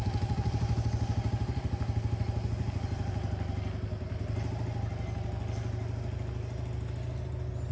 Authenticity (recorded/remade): recorded